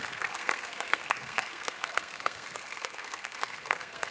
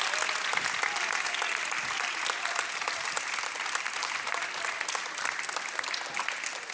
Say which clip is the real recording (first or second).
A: second